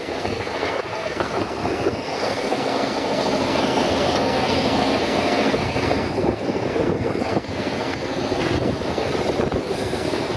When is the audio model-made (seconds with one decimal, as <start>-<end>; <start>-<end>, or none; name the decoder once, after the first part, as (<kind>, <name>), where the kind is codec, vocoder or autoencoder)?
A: 0.0-9.1 (codec, SNAC); 9.6-10.4